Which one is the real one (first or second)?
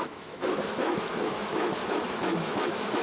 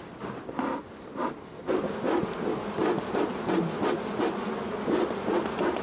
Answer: second